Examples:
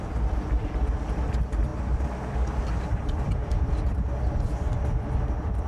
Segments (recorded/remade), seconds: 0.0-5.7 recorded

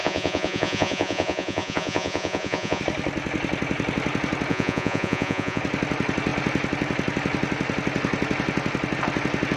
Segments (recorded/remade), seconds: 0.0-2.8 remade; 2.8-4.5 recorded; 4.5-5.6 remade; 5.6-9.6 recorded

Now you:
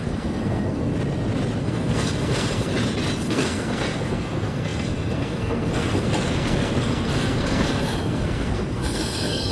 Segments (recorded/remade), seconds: 0.0-0.9 remade; 0.9-1.6 recorded; 1.6-2.7 remade; 2.7-3.3 recorded; 3.3-9.5 remade

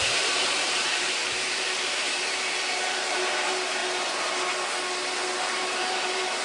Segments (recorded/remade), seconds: 0.0-3.8 remade; 3.8-5.4 recorded; 5.4-6.4 remade

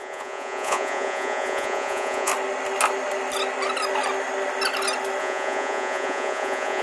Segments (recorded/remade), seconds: 0.0-2.3 remade; 2.3-5.2 recorded; 5.2-6.8 remade

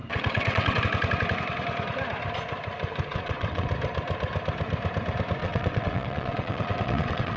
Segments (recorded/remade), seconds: 0.0-0.8 remade; 0.8-3.1 recorded; 3.1-3.7 remade; 3.7-5.4 recorded; 5.4-7.4 remade

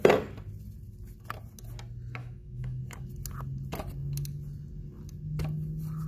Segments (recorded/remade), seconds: 0.0-2.2 recorded; 2.2-2.8 remade; 2.8-6.1 recorded

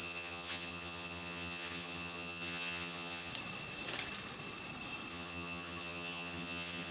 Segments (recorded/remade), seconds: 0.0-3.3 remade; 3.3-5.1 recorded; 5.1-6.9 remade